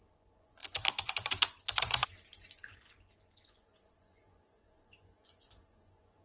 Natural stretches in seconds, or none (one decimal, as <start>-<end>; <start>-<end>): none